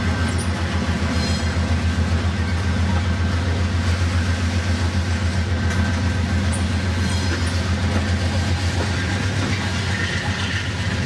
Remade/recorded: recorded